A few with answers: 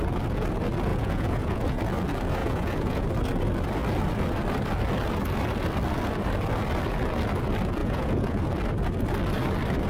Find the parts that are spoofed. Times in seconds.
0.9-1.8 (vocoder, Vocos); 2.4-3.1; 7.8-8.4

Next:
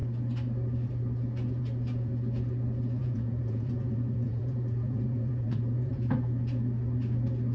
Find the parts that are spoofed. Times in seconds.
3.0-5.9 (vocoder, Vocos)

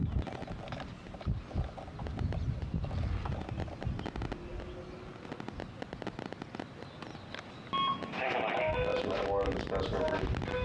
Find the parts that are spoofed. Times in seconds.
none

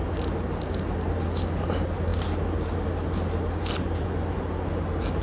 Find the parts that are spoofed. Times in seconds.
none

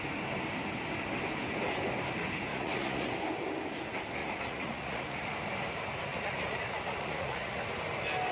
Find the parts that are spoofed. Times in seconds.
2.5-3.1 (vocoder, Vocos); 4.2-5.3; 6.1-7.6

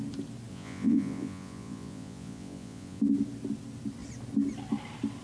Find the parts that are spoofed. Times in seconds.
0.5-3.0 (vocoder, Vocos)

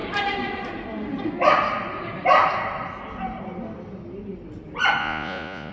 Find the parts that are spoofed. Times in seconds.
5.0-5.7 (vocoder, Vocos)

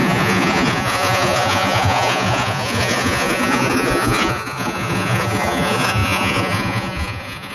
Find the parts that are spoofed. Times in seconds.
0.0-7.5 (vocoder, Vocos)